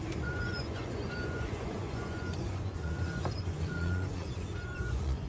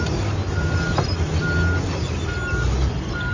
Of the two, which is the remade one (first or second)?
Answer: first